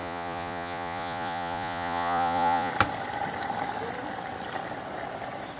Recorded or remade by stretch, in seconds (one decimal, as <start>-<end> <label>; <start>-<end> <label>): 0.0-2.7 remade; 2.7-5.6 recorded